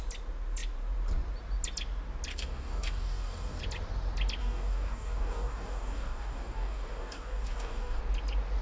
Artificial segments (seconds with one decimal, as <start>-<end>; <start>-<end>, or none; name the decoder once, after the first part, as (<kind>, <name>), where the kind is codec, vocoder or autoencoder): 2.3-3.6 (codec, DAC); 4.4-8.0